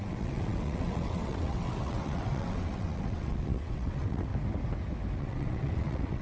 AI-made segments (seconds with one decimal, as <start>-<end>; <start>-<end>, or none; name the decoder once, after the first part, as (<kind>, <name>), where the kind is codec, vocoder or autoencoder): 0.0-4.3 (vocoder, WaveNeXt); 5.2-6.2